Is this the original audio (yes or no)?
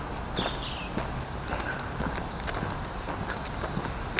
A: yes